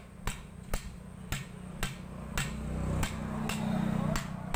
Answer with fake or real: real